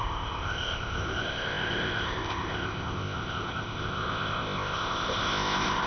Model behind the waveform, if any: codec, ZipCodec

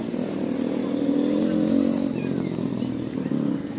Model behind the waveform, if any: none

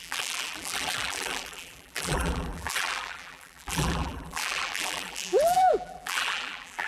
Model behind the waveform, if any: vocoder, BigVGAN v2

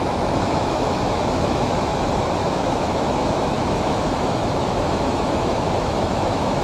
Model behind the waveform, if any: autoencoder, DAC-VAE